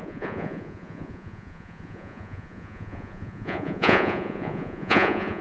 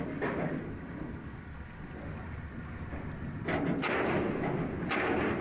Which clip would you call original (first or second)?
second